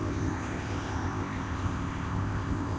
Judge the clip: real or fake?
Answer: fake